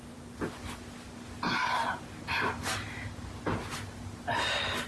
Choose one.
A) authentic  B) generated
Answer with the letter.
A